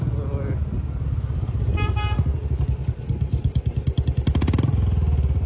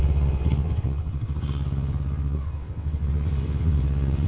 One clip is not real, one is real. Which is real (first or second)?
first